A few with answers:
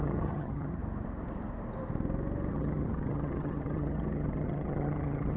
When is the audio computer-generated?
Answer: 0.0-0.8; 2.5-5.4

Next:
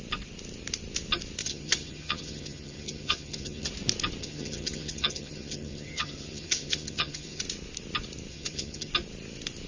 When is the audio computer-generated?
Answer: 1.4-3.7; 4.2-7.4; 8.3-8.9

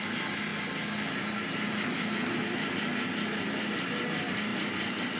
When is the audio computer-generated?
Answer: none

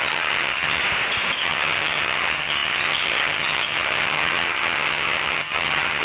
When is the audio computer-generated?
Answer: 0.0-0.8; 1.4-6.0

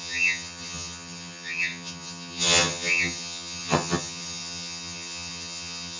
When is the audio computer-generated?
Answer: 0.0-6.0

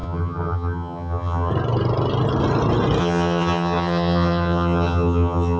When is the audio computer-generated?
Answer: 0.0-1.5; 3.0-5.6

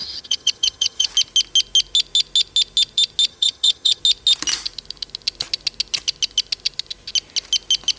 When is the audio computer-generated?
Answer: 0.0-1.1; 3.3-4.0

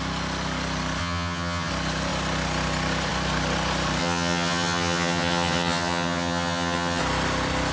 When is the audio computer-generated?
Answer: 1.0-1.7; 4.0-7.0